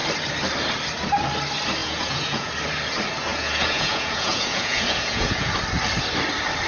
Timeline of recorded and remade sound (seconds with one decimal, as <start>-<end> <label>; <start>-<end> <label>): 0.0-1.8 recorded; 1.8-2.5 remade; 2.5-3.3 recorded; 3.3-5.5 remade; 5.5-6.7 recorded